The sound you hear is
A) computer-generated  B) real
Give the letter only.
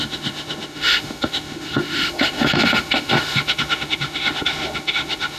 A